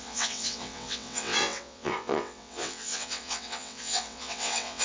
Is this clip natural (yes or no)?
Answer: no